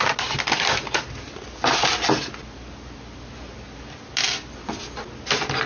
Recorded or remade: recorded